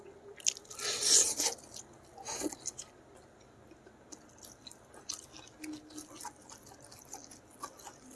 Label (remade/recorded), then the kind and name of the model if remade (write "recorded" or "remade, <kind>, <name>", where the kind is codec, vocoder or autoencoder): recorded